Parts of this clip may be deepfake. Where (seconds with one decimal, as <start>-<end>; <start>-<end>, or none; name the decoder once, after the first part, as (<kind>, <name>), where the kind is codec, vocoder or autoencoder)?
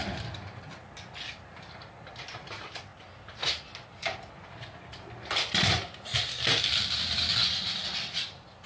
none